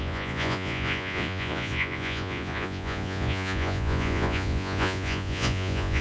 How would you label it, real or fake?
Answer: fake